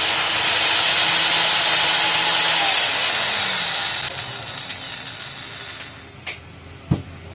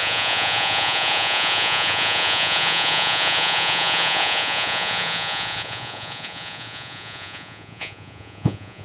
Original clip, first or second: first